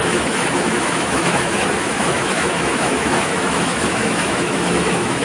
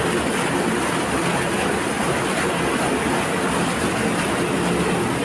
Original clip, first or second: second